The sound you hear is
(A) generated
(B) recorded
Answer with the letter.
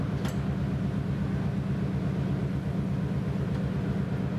B